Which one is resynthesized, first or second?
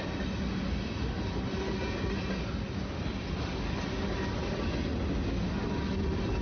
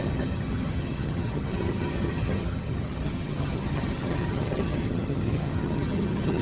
second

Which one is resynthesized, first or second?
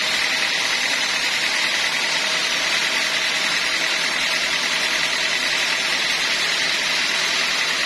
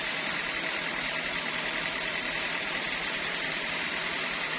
second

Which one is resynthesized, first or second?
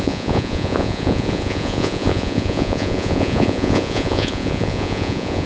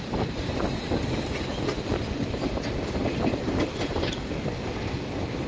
first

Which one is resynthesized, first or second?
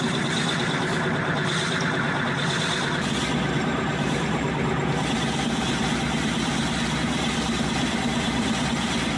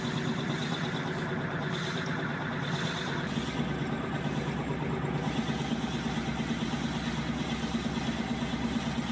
first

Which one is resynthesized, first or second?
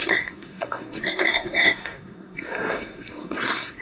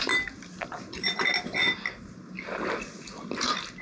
first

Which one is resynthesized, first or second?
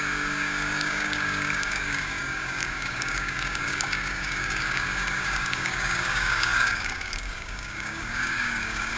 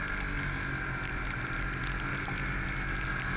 first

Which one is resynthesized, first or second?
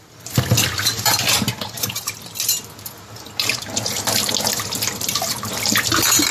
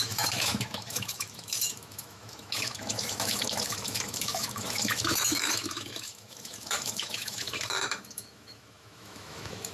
second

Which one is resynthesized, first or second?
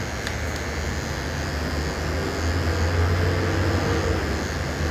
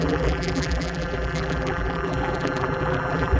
second